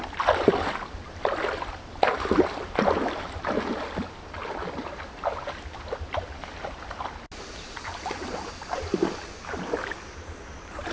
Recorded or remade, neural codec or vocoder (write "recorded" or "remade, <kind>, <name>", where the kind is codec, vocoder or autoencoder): recorded